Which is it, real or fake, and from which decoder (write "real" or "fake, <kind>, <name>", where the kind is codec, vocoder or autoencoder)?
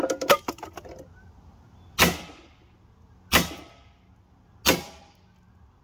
real